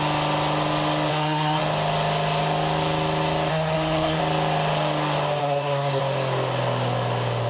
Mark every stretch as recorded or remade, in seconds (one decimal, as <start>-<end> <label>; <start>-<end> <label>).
0.0-1.1 recorded; 1.1-1.6 remade; 1.6-3.5 recorded; 3.5-4.2 remade; 4.2-5.4 recorded; 5.4-6.0 remade; 6.0-7.5 recorded